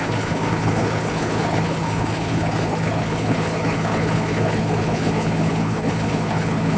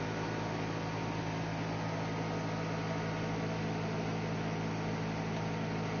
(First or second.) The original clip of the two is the second